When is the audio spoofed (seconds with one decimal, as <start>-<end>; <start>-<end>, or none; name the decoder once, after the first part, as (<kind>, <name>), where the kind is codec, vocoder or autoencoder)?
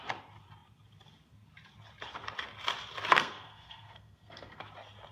3.1-4.6 (codec, SNAC)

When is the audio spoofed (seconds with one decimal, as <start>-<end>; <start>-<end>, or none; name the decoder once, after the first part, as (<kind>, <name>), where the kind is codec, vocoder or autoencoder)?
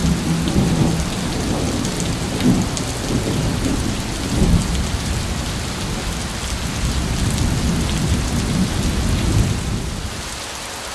none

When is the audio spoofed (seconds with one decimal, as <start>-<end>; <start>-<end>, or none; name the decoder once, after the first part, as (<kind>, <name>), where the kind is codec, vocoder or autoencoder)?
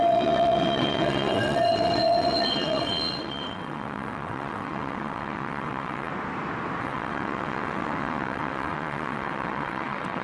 0.0-6.1 (vocoder, WaveNeXt); 6.8-10.2